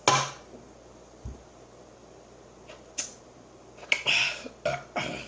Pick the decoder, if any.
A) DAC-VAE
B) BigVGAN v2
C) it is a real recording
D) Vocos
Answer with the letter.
C